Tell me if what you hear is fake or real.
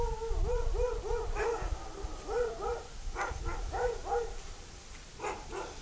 real